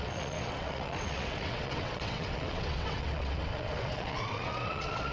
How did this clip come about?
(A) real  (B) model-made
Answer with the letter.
B